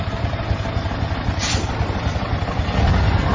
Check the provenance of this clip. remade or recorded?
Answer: recorded